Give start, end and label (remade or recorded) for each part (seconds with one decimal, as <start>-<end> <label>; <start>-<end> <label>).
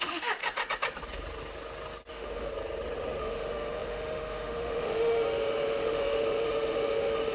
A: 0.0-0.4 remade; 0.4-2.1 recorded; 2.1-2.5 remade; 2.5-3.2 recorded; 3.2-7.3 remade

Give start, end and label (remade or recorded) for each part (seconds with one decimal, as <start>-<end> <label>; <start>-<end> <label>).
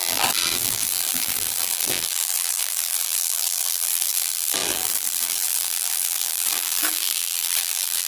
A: 0.0-8.1 remade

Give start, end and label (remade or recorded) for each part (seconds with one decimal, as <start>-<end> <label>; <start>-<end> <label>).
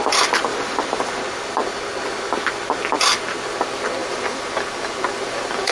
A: 0.0-0.5 recorded; 0.5-1.0 remade; 1.0-4.0 recorded; 4.0-5.7 remade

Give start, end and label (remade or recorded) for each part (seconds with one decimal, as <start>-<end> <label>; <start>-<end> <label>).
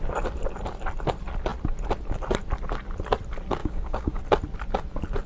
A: 0.0-3.6 recorded; 3.6-4.2 remade; 4.2-5.3 recorded